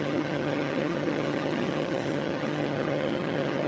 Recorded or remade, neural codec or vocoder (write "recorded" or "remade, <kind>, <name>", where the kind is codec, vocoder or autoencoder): remade, vocoder, HiFi-GAN